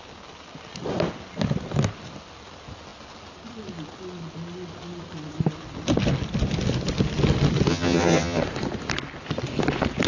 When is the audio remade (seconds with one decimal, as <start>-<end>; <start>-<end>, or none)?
7.7-8.4